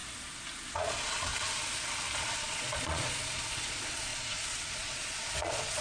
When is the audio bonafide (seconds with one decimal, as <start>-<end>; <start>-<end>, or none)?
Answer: 0.0-0.7; 1.3-2.2